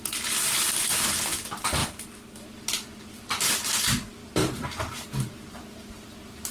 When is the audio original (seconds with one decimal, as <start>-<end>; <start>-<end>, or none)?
0.0-1.8; 3.8-6.5